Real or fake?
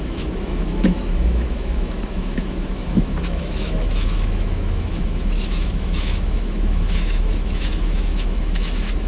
fake